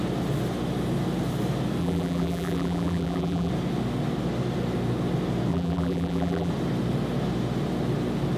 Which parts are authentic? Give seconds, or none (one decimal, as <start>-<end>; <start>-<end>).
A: 0.0-1.8; 3.5-5.5; 6.5-8.4